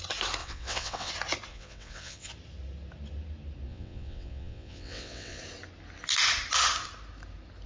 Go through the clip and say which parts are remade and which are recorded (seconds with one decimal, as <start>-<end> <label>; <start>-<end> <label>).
0.0-0.4 recorded; 0.4-1.1 remade; 1.1-1.5 recorded; 1.5-2.3 remade; 2.3-3.7 recorded; 3.7-5.4 remade; 5.4-7.7 recorded